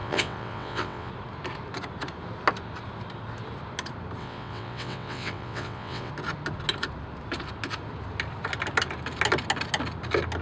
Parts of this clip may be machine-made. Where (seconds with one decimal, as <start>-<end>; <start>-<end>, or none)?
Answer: 0.0-1.1; 4.2-6.1